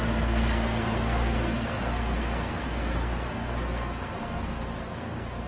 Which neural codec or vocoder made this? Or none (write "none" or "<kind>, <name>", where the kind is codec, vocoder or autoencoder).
codec, SNAC